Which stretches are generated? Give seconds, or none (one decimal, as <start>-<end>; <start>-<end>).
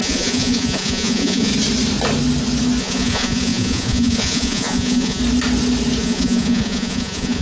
0.0-1.5; 2.8-5.2; 6.0-7.4